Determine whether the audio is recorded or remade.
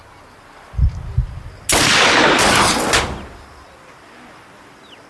recorded